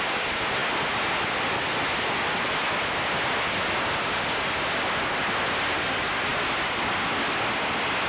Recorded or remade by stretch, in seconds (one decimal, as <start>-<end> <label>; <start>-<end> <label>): 0.0-8.1 recorded